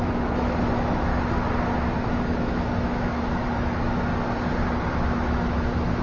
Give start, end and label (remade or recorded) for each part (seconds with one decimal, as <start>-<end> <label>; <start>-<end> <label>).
0.0-1.1 remade; 1.1-2.1 recorded; 2.1-4.1 remade; 4.1-4.9 recorded; 4.9-6.0 remade